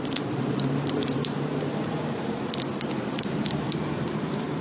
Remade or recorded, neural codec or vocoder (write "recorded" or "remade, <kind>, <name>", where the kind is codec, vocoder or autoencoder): remade, vocoder, BigVGAN v2